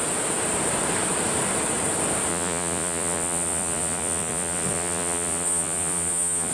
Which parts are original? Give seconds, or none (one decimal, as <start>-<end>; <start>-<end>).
0.0-2.3